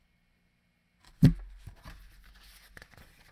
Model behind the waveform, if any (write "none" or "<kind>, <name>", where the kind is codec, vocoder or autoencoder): none